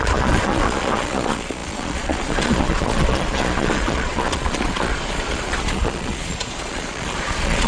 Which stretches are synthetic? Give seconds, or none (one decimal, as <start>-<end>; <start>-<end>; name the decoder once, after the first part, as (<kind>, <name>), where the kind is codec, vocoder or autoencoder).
0.0-7.7 (vocoder, Vocos)